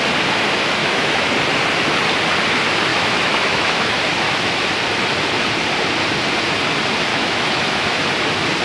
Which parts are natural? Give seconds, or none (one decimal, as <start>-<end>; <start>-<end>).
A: 0.0-0.8; 1.3-2.9; 4.0-7.1; 8.0-8.6